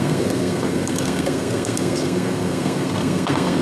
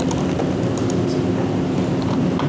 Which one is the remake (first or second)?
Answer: first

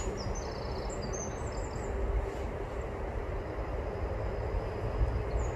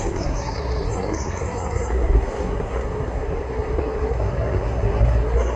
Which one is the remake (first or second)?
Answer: second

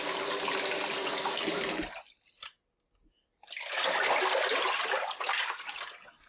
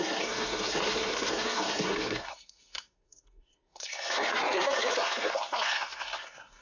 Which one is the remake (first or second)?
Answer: second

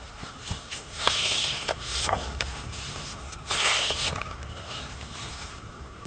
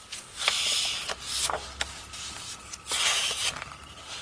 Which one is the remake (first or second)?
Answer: first